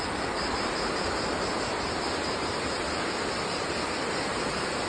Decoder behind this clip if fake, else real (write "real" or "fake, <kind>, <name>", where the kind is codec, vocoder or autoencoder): real